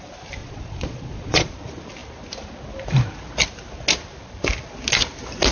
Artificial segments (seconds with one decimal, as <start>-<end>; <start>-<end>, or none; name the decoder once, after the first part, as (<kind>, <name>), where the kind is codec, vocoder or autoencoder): 0.4-1.5 (vocoder, Vocos)